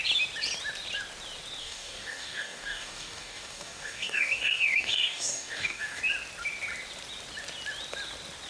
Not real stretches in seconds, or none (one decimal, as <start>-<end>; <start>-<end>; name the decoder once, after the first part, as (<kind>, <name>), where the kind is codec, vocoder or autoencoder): 1.6-6.0 (codec, DAC)